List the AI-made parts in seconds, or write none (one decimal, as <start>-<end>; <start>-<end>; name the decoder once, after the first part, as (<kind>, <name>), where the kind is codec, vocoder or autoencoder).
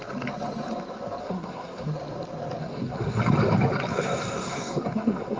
1.2-1.9 (codec, SNAC); 2.6-3.2; 3.9-5.4